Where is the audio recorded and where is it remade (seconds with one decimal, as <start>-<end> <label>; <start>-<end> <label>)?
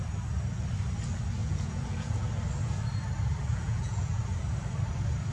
0.0-1.4 recorded; 1.4-2.3 remade; 2.3-3.5 recorded; 3.5-4.2 remade; 4.2-5.3 recorded